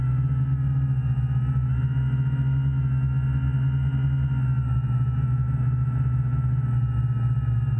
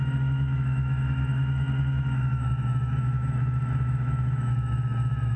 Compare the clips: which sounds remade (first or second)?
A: second